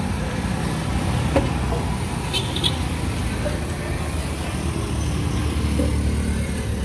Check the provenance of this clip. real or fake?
real